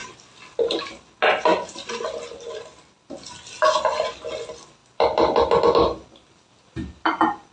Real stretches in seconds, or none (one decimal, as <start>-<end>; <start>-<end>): 1.1-7.5